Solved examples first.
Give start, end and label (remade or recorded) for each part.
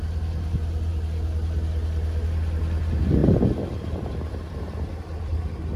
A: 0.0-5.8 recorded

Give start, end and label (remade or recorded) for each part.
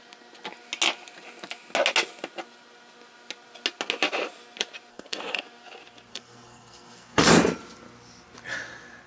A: 0.0-4.9 recorded; 4.9-5.4 remade; 5.4-6.1 recorded; 6.1-7.3 remade; 7.3-9.1 recorded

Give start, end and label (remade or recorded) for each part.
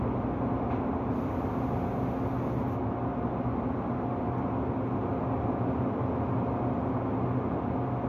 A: 0.0-8.1 recorded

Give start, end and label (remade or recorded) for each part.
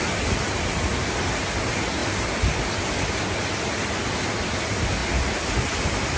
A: 0.0-6.2 recorded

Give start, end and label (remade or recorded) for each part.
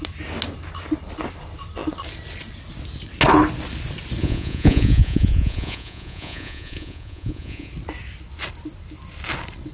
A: 0.0-4.2 recorded; 4.2-7.7 remade; 7.7-9.7 recorded